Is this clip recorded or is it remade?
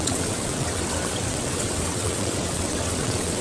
remade